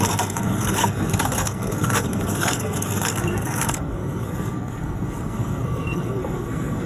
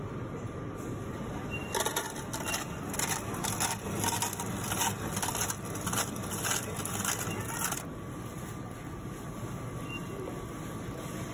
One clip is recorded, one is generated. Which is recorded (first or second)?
second